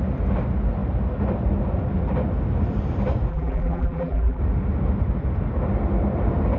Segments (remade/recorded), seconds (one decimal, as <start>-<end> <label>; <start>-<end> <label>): 0.0-3.3 recorded; 3.3-4.4 remade; 4.4-6.6 recorded